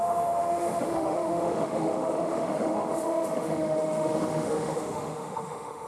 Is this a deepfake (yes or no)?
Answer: yes